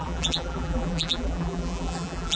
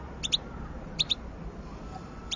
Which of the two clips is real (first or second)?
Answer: second